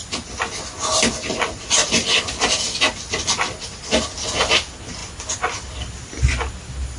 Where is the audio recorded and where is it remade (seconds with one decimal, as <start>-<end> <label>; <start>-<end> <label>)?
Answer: 0.0-7.0 recorded